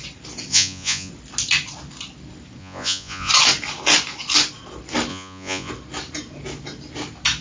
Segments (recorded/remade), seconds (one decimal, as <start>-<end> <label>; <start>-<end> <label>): 0.0-0.5 recorded; 0.5-1.1 remade; 1.1-2.6 recorded; 2.6-3.3 remade; 3.3-5.1 recorded; 5.1-5.7 remade; 5.7-7.4 recorded